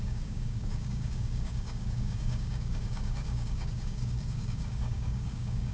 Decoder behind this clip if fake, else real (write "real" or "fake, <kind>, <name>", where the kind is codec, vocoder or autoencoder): fake, codec, DAC